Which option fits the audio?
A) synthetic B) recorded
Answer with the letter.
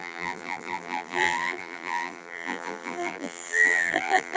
A